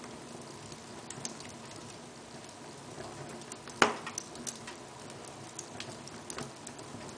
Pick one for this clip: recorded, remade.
recorded